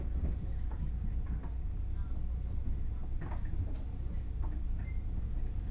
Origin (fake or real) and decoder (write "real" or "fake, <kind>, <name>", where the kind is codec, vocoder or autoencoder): real